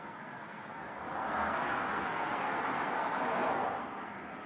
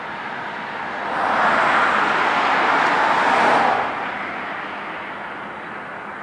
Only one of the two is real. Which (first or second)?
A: second